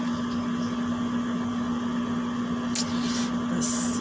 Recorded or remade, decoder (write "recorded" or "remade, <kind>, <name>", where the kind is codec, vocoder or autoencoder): recorded